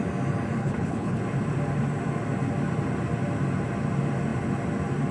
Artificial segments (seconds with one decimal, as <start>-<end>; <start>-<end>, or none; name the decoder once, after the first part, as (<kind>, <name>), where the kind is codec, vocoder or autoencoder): 0.6-1.2 (codec, HILCodec)